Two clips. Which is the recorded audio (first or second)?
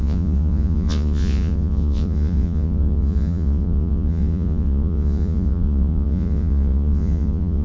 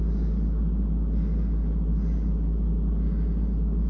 second